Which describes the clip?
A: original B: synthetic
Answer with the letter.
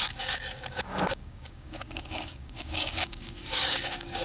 B